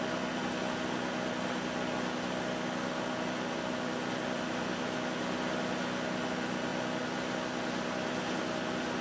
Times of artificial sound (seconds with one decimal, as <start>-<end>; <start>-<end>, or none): none